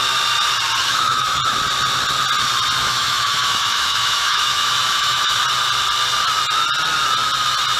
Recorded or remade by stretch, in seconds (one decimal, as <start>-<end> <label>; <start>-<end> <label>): 0.0-0.9 recorded; 0.9-1.4 remade; 1.4-2.8 recorded; 2.8-5.4 remade; 5.4-7.8 recorded